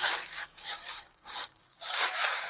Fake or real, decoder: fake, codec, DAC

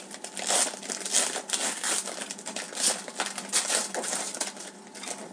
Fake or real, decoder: real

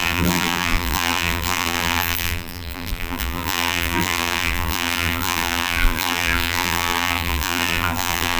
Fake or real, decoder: fake, vocoder, BigVGAN v2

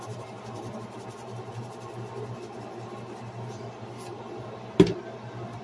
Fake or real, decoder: real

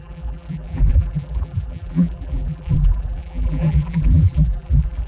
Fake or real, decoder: fake, vocoder, BigVGAN v2